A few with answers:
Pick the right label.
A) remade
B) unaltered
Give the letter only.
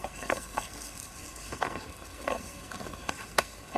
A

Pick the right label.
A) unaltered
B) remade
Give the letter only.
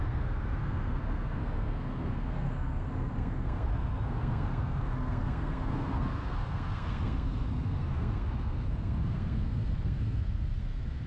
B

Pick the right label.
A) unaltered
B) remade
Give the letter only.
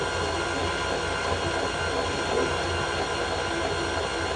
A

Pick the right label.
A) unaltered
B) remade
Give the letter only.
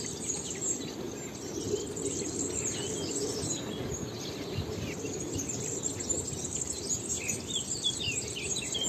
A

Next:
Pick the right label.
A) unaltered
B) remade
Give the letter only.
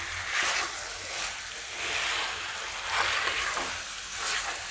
A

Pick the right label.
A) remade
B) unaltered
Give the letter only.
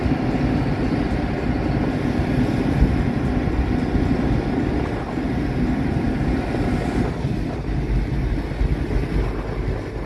B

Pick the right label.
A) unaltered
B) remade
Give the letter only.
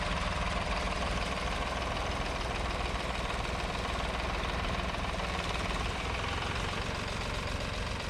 A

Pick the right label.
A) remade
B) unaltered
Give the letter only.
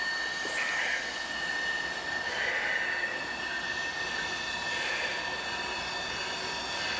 B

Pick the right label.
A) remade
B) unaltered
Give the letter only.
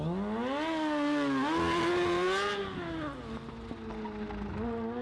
B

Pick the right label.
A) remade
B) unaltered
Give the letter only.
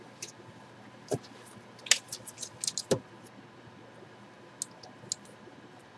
B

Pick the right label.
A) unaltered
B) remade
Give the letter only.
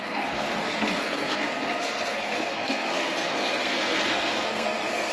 B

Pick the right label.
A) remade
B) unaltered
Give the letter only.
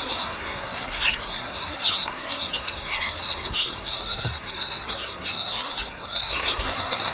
A